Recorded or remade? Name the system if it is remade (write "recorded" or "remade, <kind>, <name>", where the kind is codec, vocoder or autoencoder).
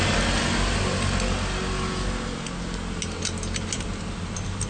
recorded